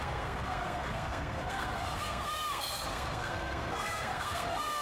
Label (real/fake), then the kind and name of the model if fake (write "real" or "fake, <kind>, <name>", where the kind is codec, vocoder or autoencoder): fake, codec, SNAC